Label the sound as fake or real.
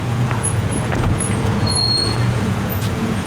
fake